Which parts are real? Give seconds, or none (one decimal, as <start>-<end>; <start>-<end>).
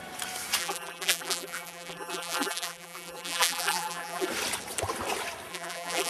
0.0-0.6; 4.3-5.5